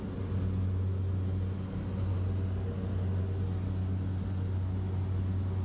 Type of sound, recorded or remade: recorded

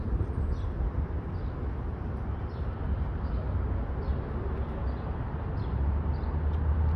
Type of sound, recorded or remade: recorded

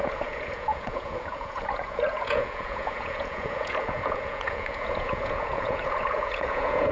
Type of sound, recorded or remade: remade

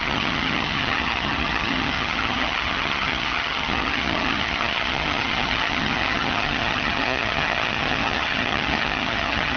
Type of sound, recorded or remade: remade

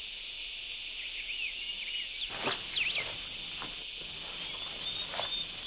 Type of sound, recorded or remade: recorded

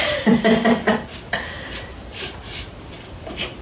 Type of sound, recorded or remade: remade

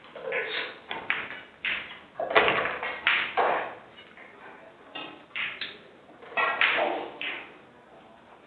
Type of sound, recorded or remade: recorded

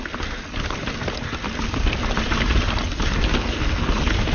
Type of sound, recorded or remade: recorded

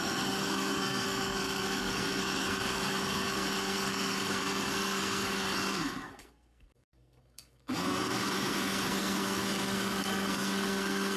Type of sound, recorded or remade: remade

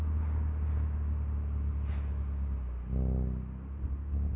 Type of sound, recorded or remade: recorded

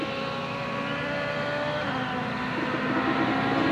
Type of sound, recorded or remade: recorded